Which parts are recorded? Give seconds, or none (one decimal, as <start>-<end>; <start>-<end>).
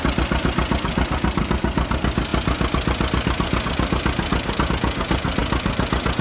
0.0-6.2